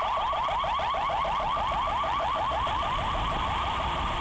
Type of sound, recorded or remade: remade